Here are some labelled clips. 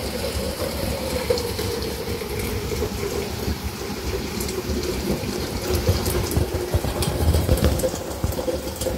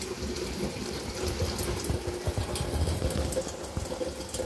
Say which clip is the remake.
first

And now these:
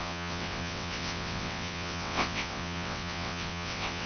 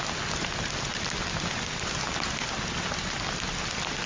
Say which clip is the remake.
first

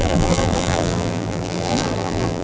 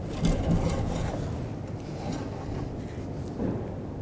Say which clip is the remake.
first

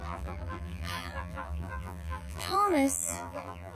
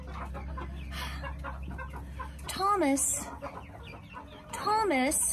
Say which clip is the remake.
first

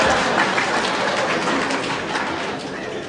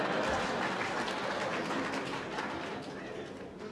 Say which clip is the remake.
first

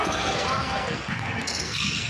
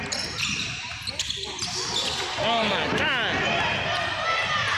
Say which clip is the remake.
first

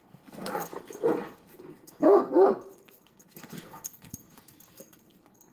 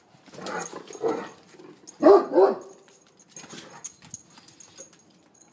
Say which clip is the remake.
first